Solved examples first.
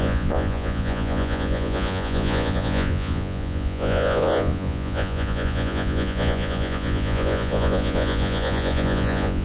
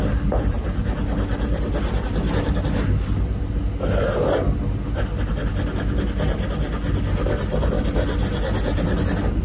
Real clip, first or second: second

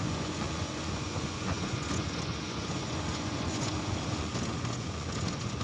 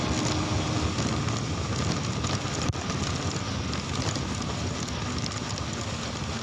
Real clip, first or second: second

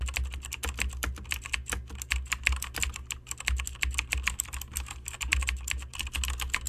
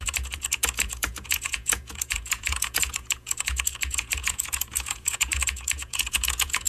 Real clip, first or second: first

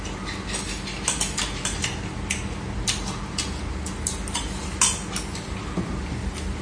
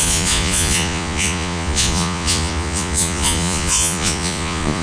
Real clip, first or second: first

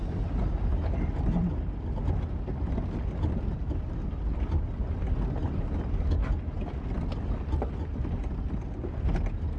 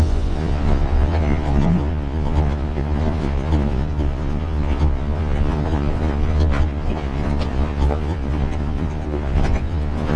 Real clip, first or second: first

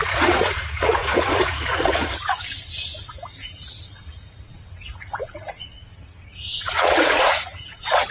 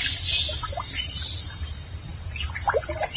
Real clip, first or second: second